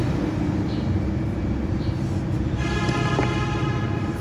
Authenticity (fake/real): fake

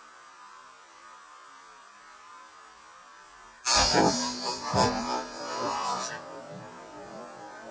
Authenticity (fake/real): real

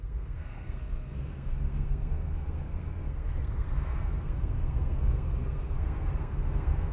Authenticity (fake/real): fake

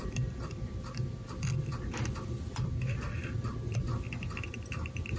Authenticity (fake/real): real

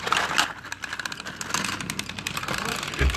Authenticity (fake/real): real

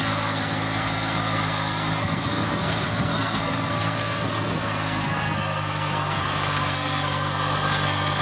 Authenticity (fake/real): fake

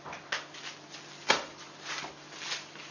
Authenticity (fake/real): real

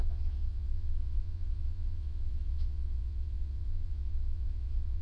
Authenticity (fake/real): fake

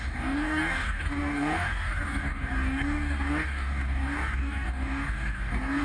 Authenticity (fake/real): fake